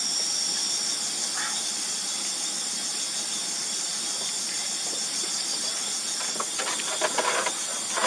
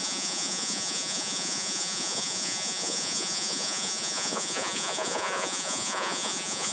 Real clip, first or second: first